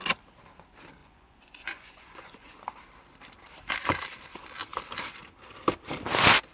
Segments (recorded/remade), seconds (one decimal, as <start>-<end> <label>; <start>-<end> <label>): 0.0-1.0 recorded; 1.0-2.6 remade; 2.6-6.5 recorded